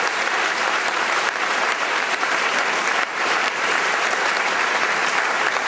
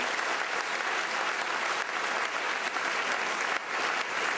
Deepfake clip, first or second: first